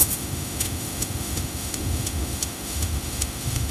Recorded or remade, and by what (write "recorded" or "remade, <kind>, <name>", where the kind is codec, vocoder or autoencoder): remade, autoencoder, DAC-VAE